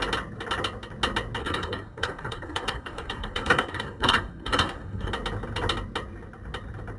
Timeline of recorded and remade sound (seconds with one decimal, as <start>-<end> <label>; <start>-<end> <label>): 0.0-1.4 recorded; 1.4-5.1 remade; 5.1-7.0 recorded